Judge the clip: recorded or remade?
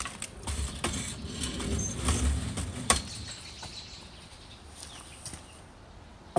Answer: recorded